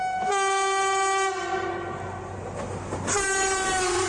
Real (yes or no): yes